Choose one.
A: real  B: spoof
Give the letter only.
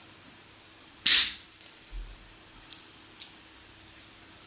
A